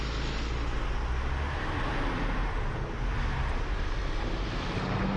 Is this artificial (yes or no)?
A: no